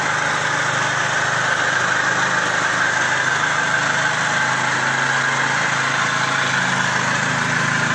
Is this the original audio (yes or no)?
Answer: yes